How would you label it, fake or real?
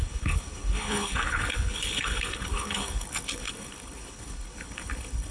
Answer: fake